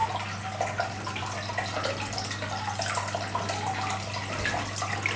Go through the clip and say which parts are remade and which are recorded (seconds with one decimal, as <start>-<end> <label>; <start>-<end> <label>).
0.0-5.2 recorded